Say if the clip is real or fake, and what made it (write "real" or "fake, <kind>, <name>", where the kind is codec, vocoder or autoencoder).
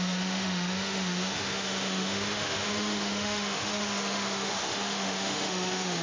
fake, autoencoder, DAC-VAE